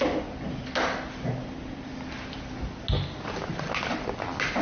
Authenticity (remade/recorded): recorded